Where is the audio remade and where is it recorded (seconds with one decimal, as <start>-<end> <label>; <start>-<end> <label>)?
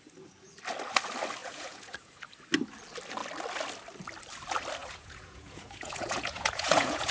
0.0-1.4 recorded; 1.4-2.1 remade; 2.1-4.8 recorded; 4.8-7.1 remade